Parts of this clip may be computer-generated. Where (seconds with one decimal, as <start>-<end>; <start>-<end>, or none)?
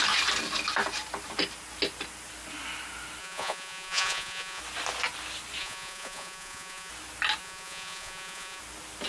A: 3.2-4.6; 5.6-6.9; 7.4-8.6